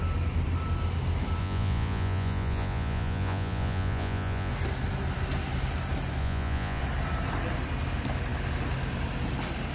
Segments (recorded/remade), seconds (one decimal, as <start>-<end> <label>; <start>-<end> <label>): 0.0-1.4 recorded; 1.4-4.5 remade; 4.5-6.2 recorded; 6.2-6.8 remade; 6.8-9.7 recorded